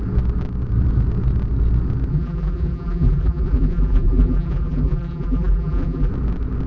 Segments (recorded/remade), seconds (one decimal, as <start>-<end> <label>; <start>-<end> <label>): 0.0-2.1 recorded; 2.1-6.1 remade; 6.1-6.7 recorded